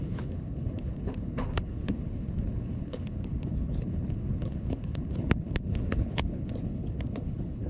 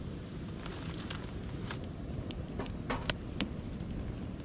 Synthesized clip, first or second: first